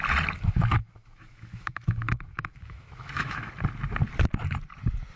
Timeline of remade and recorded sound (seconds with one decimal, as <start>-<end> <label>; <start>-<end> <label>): 0.0-0.8 recorded; 0.8-3.5 remade; 3.5-5.2 recorded